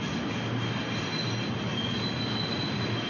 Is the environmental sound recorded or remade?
recorded